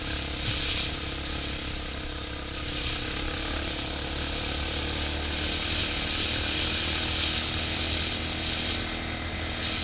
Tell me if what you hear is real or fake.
real